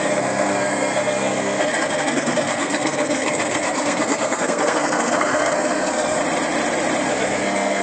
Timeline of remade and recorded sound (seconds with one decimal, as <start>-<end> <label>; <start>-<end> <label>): 0.0-6.2 remade; 6.2-7.1 recorded; 7.1-7.8 remade